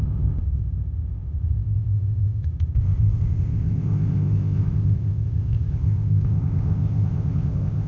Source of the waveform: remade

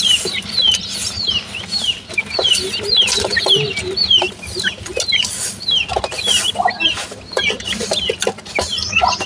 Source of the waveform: recorded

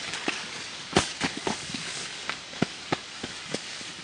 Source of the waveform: remade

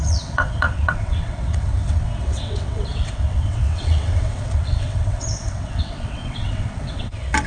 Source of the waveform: remade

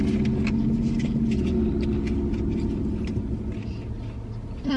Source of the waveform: recorded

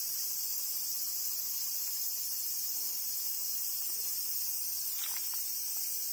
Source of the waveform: recorded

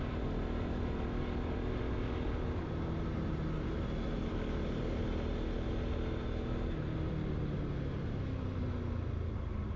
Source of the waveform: recorded